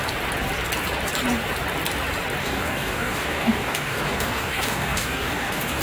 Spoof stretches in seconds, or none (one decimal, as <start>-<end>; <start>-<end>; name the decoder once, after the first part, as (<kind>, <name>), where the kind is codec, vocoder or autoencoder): 2.4-5.8 (codec, DAC)